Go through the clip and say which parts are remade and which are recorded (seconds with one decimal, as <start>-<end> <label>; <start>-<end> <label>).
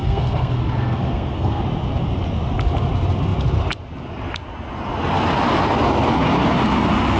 0.0-1.6 remade; 1.6-7.2 recorded